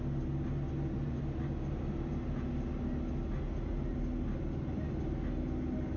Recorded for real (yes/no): yes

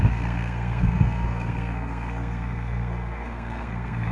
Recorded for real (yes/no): no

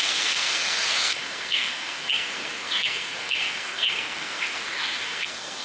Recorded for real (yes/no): no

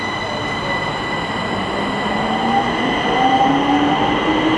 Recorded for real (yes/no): yes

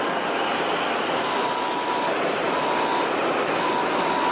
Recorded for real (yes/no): yes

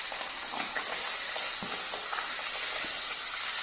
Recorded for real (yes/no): yes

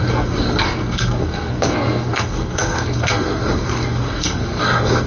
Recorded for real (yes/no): no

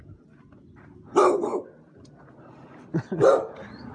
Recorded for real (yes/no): yes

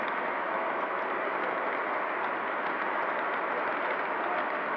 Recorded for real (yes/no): yes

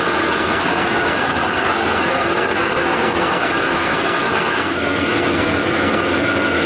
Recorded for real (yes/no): no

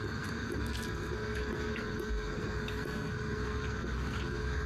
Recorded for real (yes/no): no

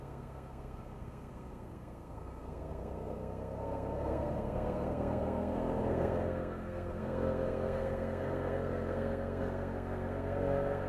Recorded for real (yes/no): no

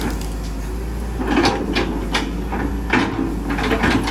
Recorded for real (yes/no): yes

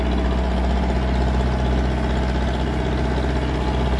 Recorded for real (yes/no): yes